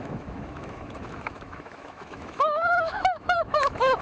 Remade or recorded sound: remade